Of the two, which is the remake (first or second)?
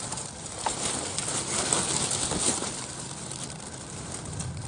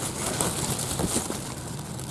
first